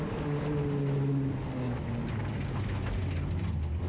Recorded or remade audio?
recorded